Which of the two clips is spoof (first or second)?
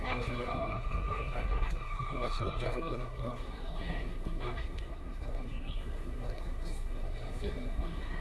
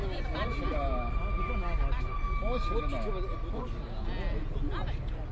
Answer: first